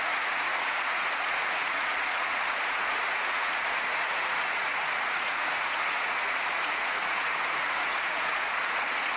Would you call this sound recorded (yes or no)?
no